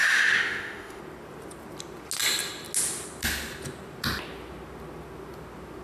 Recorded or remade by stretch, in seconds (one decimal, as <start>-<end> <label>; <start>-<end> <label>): 0.0-1.0 remade; 1.0-5.8 recorded